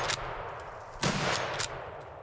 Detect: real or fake real